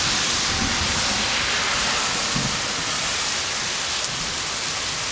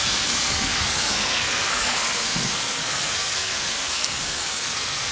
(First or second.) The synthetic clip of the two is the second